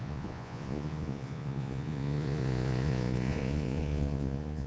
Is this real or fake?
fake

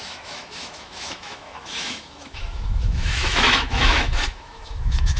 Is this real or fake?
fake